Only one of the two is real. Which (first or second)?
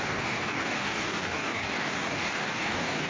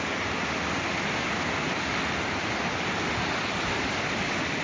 second